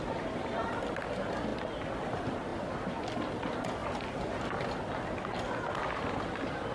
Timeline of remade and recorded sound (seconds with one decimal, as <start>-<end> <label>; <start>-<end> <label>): 0.0-6.7 recorded